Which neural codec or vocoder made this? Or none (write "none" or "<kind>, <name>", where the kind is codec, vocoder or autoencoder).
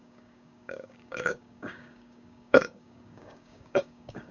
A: codec, DAC